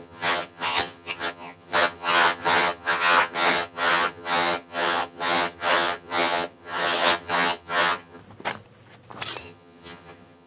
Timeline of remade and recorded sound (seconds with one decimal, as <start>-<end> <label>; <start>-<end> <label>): 0.0-8.2 remade; 8.2-9.4 recorded; 9.4-10.5 remade